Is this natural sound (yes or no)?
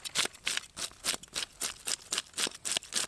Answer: yes